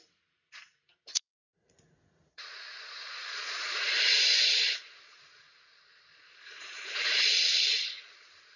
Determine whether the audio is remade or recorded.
remade